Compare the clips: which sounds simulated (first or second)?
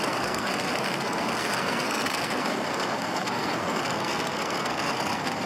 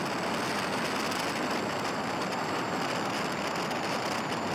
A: first